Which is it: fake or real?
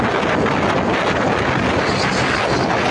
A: real